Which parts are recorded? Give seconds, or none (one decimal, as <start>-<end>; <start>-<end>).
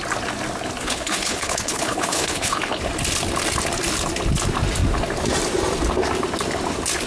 0.0-0.8; 2.8-7.1